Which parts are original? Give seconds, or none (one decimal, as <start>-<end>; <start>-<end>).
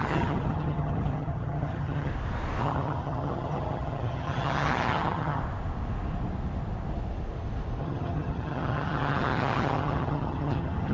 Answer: 2.1-2.6; 5.4-7.8